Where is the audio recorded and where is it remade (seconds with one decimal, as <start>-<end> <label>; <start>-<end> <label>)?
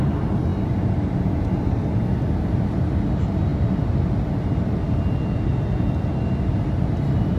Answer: 0.0-7.4 recorded